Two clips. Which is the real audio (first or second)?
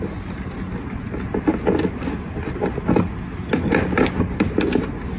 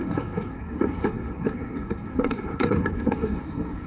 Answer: first